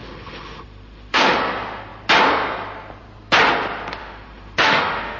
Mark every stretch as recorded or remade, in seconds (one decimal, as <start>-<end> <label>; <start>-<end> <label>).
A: 0.0-1.3 remade; 1.3-4.0 recorded; 4.0-5.2 remade